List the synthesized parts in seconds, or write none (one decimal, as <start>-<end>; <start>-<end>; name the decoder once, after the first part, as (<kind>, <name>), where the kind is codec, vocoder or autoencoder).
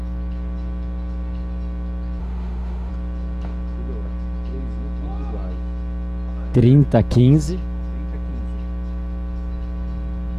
2.2-2.9 (autoencoder, DAC-VAE)